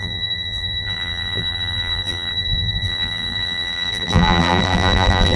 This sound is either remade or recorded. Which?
remade